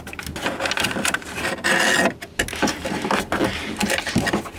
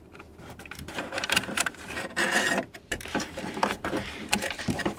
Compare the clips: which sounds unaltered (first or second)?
first